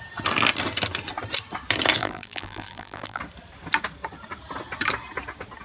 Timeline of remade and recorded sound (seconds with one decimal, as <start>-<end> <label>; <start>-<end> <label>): 0.0-2.0 recorded; 2.0-3.2 remade; 3.2-5.6 recorded